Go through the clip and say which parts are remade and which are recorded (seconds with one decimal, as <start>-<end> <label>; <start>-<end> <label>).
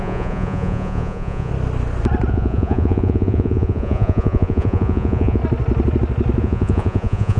0.0-1.5 remade; 1.5-2.3 recorded; 2.3-5.4 remade; 5.4-6.4 recorded; 6.4-7.4 remade